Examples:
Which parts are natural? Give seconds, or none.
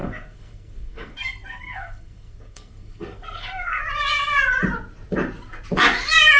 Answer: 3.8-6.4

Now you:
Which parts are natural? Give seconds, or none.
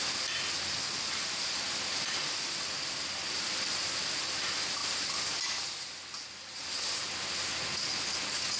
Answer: 0.0-8.6